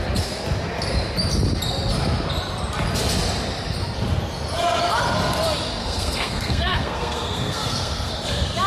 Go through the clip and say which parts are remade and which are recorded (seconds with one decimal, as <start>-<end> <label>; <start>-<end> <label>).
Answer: 0.0-5.8 recorded; 5.8-8.1 remade; 8.1-8.7 recorded